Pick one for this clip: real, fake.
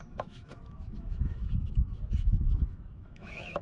fake